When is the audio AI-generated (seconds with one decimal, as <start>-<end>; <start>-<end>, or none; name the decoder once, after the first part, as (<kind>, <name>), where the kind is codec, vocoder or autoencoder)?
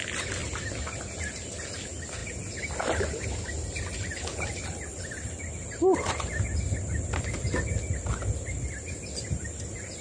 none